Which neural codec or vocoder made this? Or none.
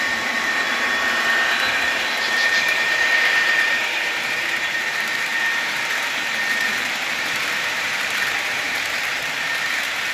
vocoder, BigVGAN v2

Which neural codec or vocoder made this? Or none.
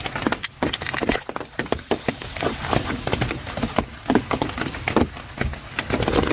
none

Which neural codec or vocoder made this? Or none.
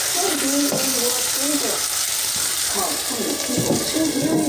none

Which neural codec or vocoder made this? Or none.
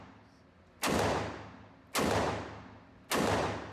none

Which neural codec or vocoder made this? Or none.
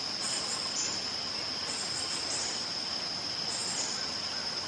none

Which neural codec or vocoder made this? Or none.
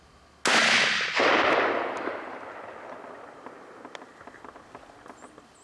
none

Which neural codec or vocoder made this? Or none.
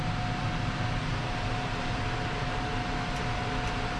none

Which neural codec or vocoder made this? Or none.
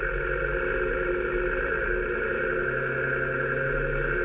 none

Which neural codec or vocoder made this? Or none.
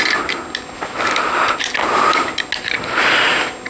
none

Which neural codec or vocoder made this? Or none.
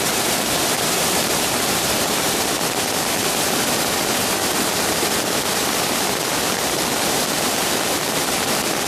vocoder, BigVGAN v2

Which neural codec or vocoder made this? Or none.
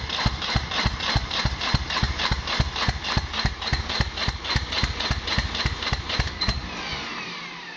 vocoder, BigVGAN v2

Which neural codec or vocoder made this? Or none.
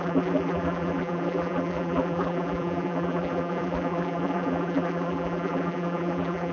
vocoder, BigVGAN v2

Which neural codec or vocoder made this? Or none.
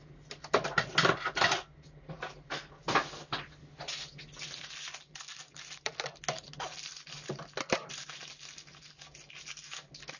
none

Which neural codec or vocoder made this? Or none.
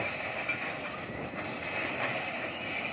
none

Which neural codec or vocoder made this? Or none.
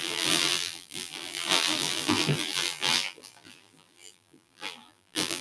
vocoder, BigVGAN v2